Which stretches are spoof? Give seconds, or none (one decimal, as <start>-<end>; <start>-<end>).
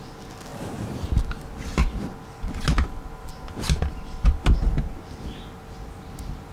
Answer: none